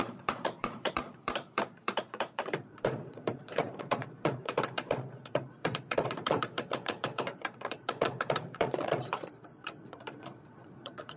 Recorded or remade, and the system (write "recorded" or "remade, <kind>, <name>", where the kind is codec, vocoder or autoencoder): remade, vocoder, Vocos